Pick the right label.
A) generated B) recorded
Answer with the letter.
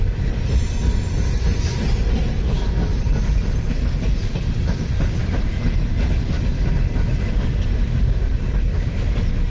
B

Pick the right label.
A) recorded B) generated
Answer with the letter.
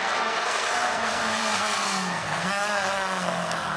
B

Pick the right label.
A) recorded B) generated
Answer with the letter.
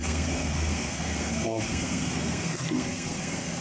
B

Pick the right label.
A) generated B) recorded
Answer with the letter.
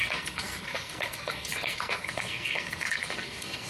A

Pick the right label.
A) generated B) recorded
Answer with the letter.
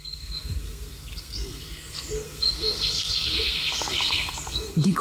A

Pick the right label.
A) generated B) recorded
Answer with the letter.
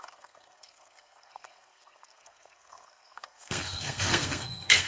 A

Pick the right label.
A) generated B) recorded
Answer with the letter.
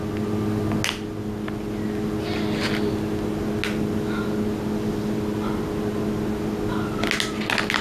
B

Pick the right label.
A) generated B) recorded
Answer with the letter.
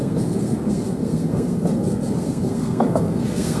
A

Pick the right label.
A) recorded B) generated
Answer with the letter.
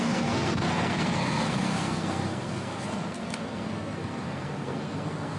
B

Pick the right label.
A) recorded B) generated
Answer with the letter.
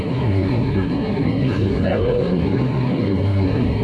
B